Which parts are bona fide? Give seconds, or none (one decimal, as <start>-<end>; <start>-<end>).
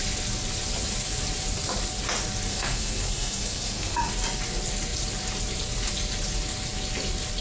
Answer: 0.0-2.5; 4.1-7.4